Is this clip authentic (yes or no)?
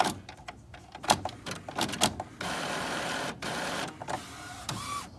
yes